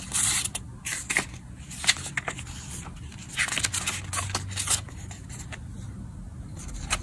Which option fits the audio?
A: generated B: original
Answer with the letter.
B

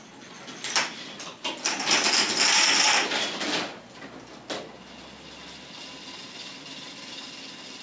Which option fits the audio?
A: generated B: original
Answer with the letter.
B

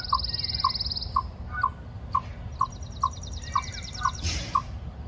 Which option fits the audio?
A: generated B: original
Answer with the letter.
B